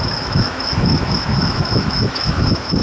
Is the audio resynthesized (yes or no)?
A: yes